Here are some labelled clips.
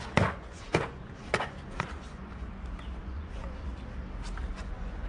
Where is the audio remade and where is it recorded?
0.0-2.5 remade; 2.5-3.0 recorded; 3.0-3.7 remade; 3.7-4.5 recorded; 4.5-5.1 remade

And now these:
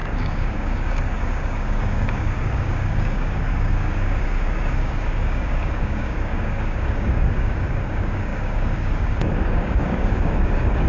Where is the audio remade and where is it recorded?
0.0-10.9 remade